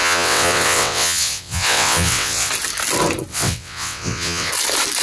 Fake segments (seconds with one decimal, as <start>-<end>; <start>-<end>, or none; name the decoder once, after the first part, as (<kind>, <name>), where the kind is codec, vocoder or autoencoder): 0.0-2.5 (vocoder, WaveNeXt); 3.3-4.5